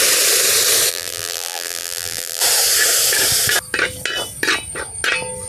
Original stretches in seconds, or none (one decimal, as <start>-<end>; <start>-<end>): 0.0-0.9; 2.4-5.5